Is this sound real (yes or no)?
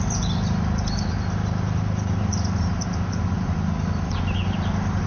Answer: yes